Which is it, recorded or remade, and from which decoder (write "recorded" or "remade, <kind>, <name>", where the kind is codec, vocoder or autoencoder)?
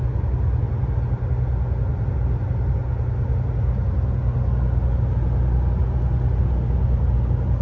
recorded